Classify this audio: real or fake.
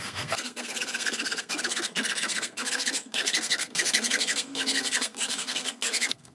fake